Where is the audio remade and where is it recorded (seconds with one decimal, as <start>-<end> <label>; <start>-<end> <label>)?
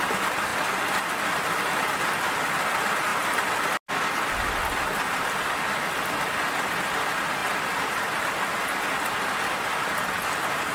0.0-10.7 recorded